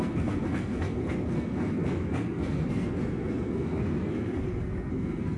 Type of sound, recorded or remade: remade